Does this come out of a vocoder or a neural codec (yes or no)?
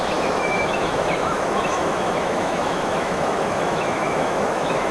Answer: yes